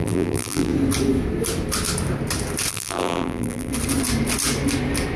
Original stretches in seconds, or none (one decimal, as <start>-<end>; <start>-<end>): 0.7-2.7; 3.7-5.2